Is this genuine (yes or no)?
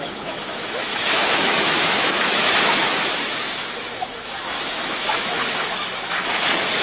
no